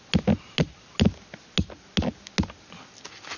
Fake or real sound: real